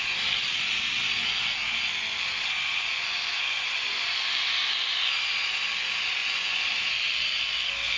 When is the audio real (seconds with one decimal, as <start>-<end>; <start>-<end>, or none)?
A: 0.0-2.7; 4.1-6.2; 6.7-8.0